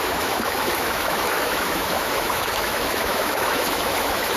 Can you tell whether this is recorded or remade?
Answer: remade